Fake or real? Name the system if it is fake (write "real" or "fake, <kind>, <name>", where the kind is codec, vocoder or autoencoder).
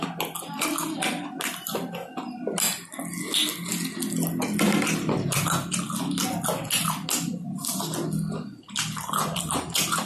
real